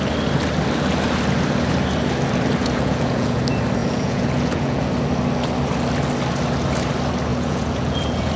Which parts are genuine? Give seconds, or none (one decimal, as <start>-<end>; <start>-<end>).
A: 0.0-2.6; 3.4-3.8; 4.9-7.3

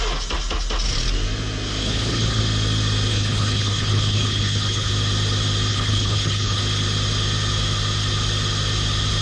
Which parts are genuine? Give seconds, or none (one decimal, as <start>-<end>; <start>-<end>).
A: 0.0-1.8; 2.4-3.1; 4.9-5.7; 6.6-9.2

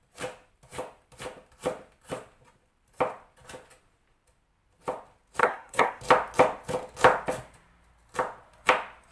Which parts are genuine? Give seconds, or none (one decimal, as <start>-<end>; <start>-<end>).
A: 0.0-5.4; 6.0-9.1

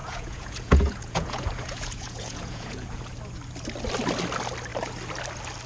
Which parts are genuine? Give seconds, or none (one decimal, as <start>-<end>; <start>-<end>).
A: 3.0-5.7